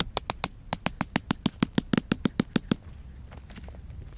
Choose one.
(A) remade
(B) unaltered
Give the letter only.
B